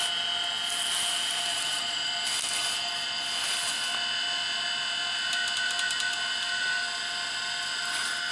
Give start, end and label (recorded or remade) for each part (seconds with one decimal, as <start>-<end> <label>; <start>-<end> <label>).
0.0-1.5 recorded; 1.5-2.1 remade; 2.1-8.3 recorded